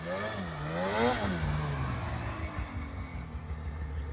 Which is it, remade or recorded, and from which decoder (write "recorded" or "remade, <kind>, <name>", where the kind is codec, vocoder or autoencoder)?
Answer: recorded